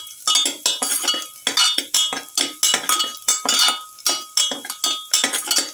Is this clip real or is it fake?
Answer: real